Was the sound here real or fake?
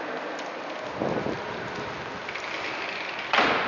real